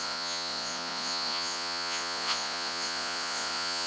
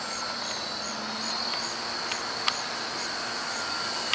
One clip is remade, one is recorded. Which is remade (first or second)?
first